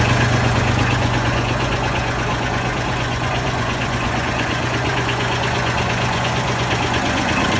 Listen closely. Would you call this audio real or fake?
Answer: fake